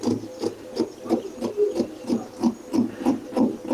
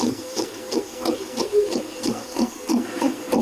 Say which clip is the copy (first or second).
second